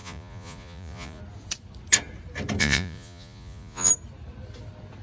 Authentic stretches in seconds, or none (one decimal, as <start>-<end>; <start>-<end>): 1.2-2.6; 3.9-5.0